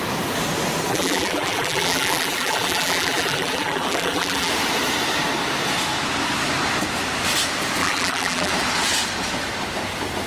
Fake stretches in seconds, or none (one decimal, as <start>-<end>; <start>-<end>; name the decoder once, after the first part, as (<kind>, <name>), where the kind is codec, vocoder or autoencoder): 0.9-4.5 (vocoder, BigVGAN v2); 7.8-8.5